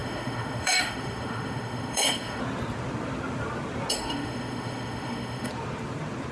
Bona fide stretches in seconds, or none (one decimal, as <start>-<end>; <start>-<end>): 2.4-3.9; 5.5-6.3